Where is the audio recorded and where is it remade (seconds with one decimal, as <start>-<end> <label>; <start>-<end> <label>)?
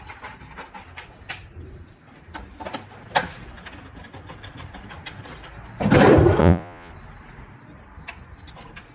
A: 0.0-6.4 recorded; 6.4-6.9 remade; 6.9-8.9 recorded